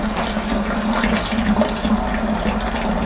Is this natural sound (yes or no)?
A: yes